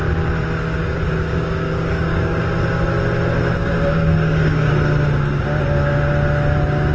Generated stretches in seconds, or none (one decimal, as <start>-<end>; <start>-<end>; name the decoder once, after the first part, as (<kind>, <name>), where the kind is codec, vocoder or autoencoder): 0.8-2.4 (codec, DAC); 3.6-4.7